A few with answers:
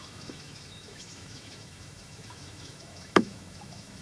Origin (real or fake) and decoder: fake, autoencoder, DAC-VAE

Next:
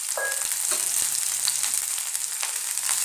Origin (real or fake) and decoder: real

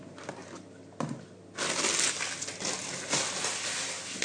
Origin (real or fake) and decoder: real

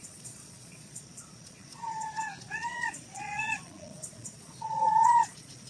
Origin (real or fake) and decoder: fake, vocoder, Vocos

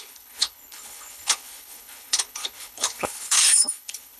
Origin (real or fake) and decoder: fake, codec, HILCodec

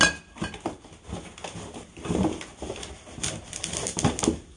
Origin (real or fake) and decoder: real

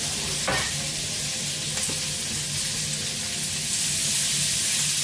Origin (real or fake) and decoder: real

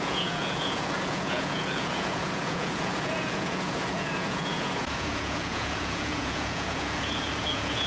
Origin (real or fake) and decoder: fake, vocoder, Vocos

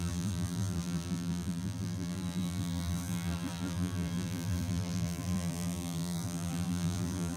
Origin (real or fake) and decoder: fake, vocoder, BigVGAN v2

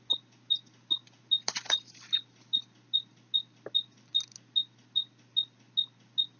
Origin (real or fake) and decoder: real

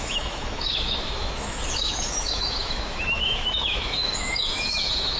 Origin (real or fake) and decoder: fake, autoencoder, DAC-VAE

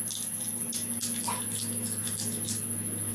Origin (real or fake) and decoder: real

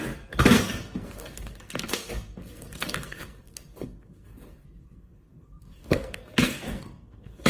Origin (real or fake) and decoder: fake, codec, SNAC